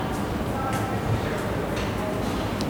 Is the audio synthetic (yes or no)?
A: no